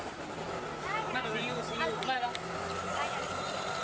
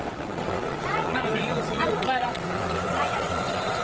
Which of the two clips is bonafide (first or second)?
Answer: first